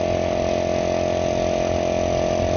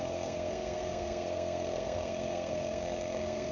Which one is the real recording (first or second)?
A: first